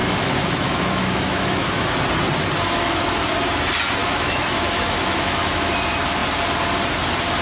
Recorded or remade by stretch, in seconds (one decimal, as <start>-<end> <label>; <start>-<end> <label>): 0.0-1.9 remade; 1.9-4.0 recorded; 4.0-5.7 remade; 5.7-7.4 recorded